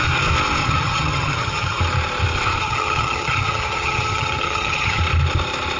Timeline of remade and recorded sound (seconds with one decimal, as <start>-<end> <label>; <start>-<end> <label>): 0.0-0.6 recorded; 0.6-1.8 remade; 1.8-2.6 recorded; 2.6-5.0 remade; 5.0-5.8 recorded